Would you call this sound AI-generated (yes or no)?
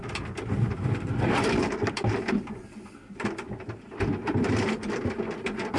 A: yes